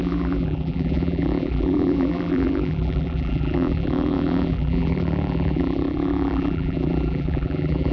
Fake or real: fake